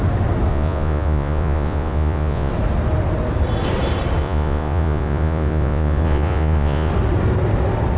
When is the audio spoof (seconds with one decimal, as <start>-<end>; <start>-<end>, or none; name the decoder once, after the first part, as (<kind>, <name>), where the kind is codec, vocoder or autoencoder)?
0.5-2.5 (vocoder, Vocos); 4.2-6.9